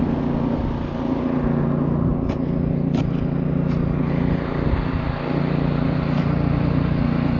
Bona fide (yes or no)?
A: yes